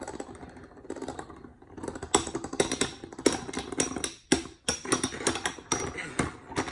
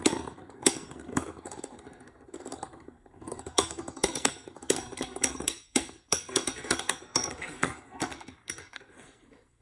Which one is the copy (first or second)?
second